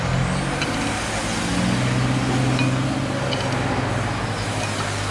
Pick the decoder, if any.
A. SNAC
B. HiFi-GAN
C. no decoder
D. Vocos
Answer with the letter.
C